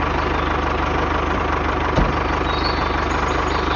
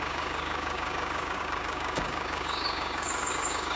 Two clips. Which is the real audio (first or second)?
first